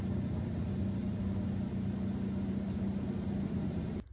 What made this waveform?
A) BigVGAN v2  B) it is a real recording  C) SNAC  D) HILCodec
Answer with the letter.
B